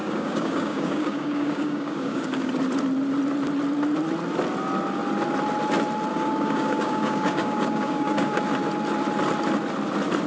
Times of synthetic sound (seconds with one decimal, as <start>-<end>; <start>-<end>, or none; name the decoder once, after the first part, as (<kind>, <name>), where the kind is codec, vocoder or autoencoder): 0.0-2.5 (codec, DAC); 6.1-8.4